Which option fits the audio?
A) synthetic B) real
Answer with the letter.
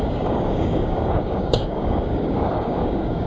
A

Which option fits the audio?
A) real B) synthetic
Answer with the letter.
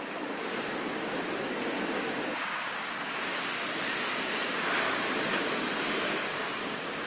B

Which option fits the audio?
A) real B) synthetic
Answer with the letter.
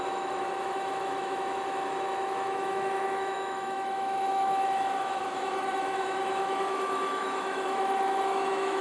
B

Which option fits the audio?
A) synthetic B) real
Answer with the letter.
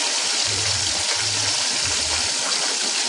A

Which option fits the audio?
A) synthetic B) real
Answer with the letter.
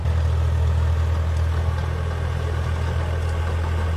B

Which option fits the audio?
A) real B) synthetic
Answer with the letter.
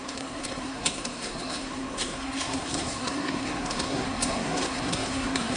B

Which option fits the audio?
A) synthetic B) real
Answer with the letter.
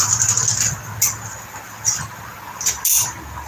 B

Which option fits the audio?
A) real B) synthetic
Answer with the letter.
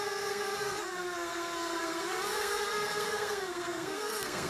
B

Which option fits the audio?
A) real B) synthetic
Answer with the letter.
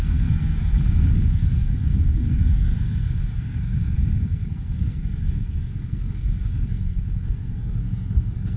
B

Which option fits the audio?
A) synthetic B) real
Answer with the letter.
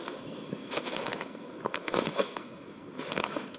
A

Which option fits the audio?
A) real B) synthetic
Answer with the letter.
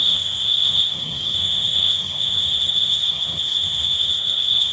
B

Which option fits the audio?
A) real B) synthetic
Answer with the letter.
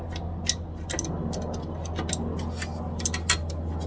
A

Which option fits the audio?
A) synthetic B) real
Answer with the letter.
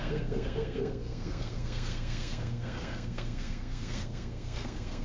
A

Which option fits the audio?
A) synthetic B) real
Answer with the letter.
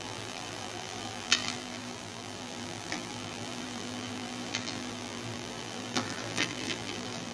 A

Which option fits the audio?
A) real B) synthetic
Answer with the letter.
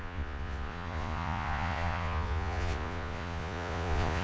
B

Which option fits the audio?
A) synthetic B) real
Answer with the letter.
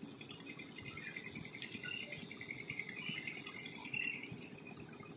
B